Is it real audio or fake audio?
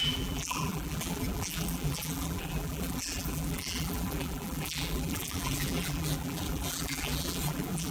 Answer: fake